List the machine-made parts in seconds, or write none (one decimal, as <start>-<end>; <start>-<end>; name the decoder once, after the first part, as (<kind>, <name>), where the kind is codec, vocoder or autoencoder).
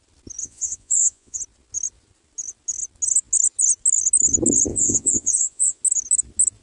0.4-1.4 (vocoder, Vocos); 4.7-5.8